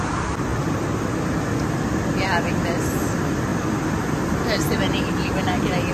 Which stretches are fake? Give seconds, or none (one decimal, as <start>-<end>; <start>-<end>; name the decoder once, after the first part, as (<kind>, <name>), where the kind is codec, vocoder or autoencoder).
none